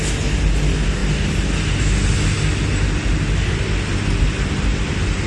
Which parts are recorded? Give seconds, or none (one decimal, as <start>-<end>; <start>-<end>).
0.0-5.3

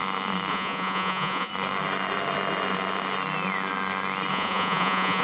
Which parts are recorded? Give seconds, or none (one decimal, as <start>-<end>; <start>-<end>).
0.0-0.5; 1.5-4.3